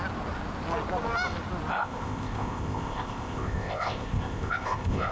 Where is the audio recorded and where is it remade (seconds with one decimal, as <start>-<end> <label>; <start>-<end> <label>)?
0.0-1.7 recorded; 1.7-5.1 remade